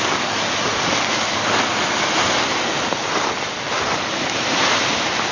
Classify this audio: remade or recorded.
recorded